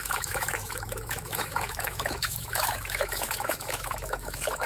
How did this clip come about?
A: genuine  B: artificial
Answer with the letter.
B